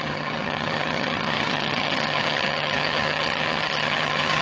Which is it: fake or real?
fake